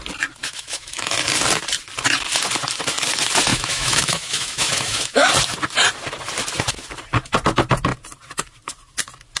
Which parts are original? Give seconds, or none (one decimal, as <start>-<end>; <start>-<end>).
0.0-0.4; 1.1-3.5; 5.3-9.4